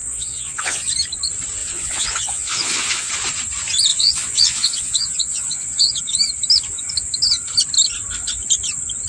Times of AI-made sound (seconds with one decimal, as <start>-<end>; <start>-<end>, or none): 0.0-0.9; 1.6-3.1; 3.9-6.0